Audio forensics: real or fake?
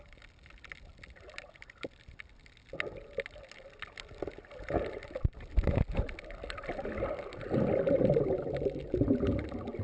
real